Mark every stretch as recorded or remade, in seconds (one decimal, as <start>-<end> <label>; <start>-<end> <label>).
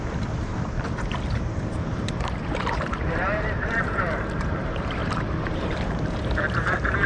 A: 0.0-0.5 remade; 0.5-1.4 recorded; 1.4-7.1 remade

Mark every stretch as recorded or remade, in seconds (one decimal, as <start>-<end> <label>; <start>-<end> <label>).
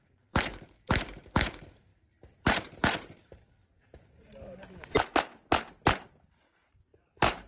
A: 0.0-5.1 remade; 5.1-6.0 recorded; 6.0-7.5 remade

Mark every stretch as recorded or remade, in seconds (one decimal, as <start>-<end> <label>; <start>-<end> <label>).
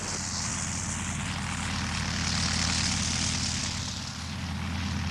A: 0.0-5.1 recorded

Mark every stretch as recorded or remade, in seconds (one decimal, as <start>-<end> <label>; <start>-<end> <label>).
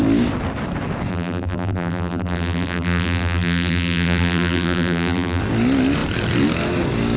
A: 0.0-1.1 recorded; 1.1-5.4 remade; 5.4-7.2 recorded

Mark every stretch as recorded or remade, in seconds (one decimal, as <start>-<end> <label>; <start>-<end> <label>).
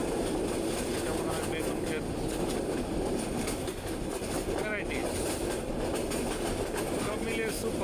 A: 0.0-5.0 recorded; 5.0-5.6 remade; 5.6-7.8 recorded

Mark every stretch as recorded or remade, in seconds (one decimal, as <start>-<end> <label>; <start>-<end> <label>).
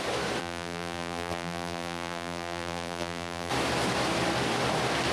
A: 0.0-0.4 recorded; 0.4-3.5 remade; 3.5-5.1 recorded